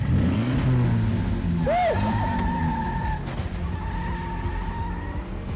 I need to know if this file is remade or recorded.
recorded